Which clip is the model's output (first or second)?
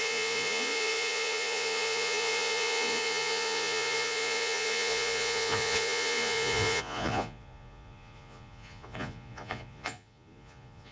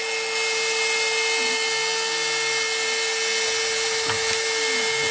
first